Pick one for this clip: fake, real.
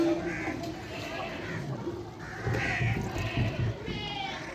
real